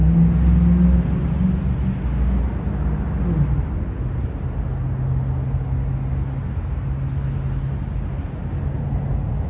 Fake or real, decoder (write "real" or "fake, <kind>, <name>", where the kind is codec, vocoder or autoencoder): real